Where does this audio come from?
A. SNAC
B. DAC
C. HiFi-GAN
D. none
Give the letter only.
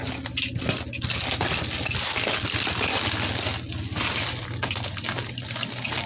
D